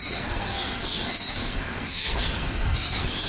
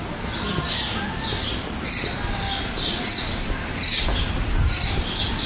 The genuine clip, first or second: second